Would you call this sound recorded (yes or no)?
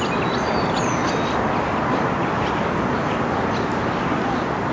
yes